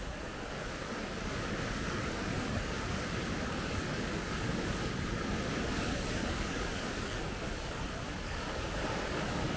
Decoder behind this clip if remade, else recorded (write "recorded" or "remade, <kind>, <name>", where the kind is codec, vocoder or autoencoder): remade, codec, DAC